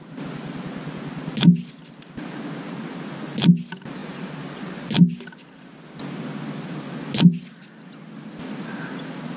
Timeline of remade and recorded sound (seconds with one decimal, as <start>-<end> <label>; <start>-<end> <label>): 0.0-9.4 recorded